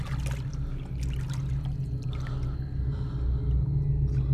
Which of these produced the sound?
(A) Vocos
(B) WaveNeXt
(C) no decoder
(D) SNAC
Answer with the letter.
C